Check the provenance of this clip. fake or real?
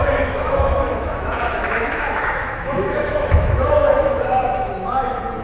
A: fake